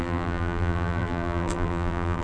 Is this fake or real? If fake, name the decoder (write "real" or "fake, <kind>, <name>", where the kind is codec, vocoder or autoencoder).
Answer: fake, vocoder, BigVGAN v2